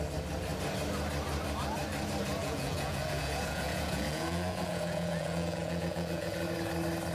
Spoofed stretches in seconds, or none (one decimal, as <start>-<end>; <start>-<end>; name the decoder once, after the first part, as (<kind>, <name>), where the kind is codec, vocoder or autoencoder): 2.4-6.4 (vocoder, Vocos)